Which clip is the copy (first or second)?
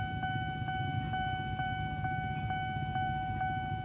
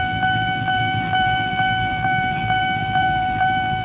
second